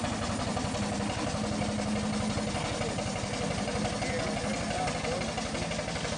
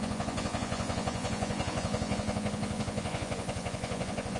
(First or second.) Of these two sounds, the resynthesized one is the second